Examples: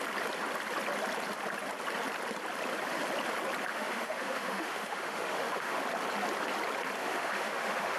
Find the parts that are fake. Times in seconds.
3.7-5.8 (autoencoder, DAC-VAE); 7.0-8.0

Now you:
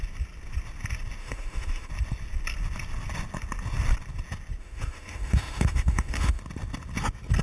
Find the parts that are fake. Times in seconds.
1.2-1.9 (autoencoder, DAC-VAE); 4.6-6.4

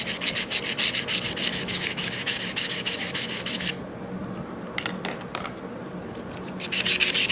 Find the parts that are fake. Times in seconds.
1.5-3.8 (autoencoder, DAC-VAE)

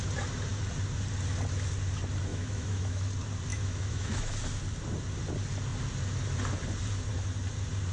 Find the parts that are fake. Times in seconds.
2.3-3.1 (autoencoder, DAC-VAE); 3.5-4.3

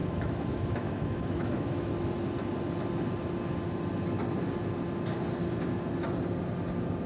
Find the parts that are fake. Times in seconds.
0.0-1.9 (autoencoder, DAC-VAE)